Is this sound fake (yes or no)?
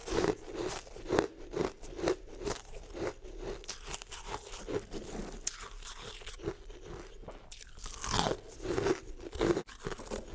no